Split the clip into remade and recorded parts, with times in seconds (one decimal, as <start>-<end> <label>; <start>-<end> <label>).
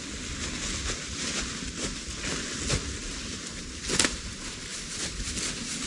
0.0-3.2 recorded; 3.2-3.7 remade; 3.7-4.7 recorded; 4.7-5.3 remade; 5.3-5.9 recorded